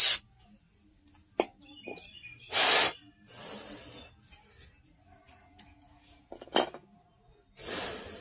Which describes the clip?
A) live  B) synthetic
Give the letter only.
A